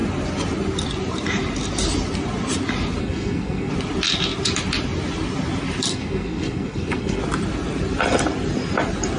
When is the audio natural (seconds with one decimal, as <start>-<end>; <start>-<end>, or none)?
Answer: 0.0-3.0; 3.7-5.9; 7.2-9.2